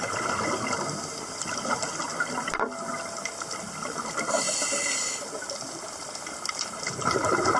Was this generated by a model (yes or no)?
no